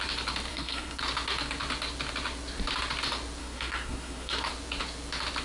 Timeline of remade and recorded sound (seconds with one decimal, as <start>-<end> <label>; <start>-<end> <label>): 0.0-0.5 recorded; 0.5-1.0 remade; 1.0-3.4 recorded; 3.4-4.5 remade; 4.5-5.4 recorded

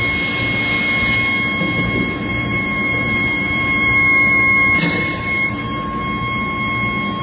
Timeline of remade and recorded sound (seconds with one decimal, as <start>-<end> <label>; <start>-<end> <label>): 0.0-2.3 recorded; 2.3-6.0 remade; 6.0-7.2 recorded

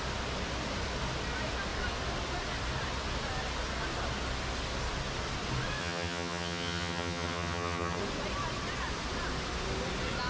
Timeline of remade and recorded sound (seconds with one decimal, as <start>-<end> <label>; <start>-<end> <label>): 0.0-5.8 recorded; 5.8-8.0 remade; 8.0-10.3 recorded

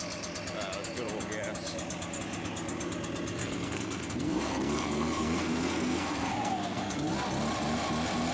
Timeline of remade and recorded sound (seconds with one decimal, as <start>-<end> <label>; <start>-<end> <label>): 0.0-3.4 recorded; 3.4-7.1 remade; 7.1-8.3 recorded

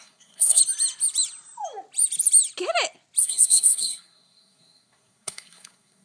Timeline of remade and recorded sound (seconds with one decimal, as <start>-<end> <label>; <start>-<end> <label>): 0.0-0.6 remade; 0.6-3.2 recorded; 3.2-6.0 remade

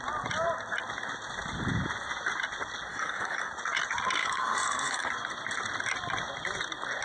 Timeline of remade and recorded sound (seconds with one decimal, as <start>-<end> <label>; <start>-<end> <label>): 0.0-2.9 recorded; 2.9-3.5 remade; 3.5-4.2 recorded; 4.2-5.1 remade; 5.1-7.0 recorded

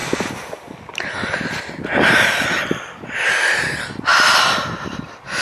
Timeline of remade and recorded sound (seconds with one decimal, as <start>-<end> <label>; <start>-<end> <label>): 0.0-5.4 recorded